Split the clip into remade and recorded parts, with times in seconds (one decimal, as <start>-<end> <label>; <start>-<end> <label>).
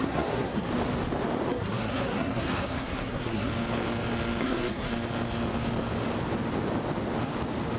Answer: 0.0-0.7 remade; 0.7-1.5 recorded; 1.5-3.5 remade; 3.5-4.4 recorded; 4.4-4.9 remade; 4.9-7.8 recorded